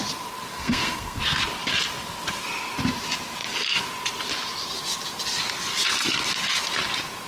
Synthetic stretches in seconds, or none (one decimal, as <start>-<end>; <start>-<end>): 0.5-1.2